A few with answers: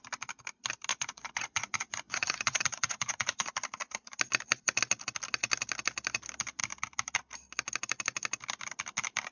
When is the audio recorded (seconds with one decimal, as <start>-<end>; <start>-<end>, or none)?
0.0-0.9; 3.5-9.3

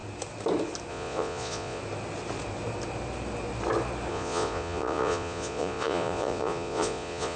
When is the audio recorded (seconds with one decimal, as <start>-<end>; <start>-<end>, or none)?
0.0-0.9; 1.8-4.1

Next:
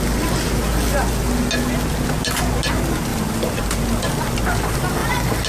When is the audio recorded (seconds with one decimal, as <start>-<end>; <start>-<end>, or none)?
0.0-5.5

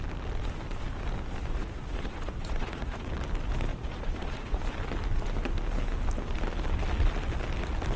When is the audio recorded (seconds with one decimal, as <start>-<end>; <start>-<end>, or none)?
0.0-1.4; 3.1-3.7; 4.6-8.0